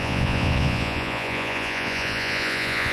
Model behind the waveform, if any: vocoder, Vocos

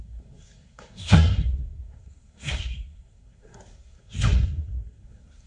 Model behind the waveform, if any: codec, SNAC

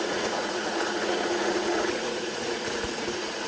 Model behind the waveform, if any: vocoder, Vocos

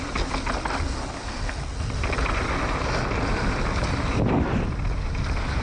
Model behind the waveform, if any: none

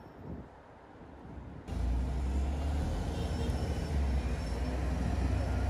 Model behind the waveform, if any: none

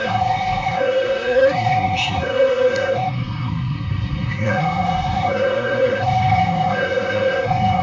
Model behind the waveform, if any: codec, SNAC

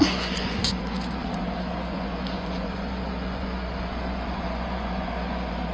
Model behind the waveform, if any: vocoder, Vocos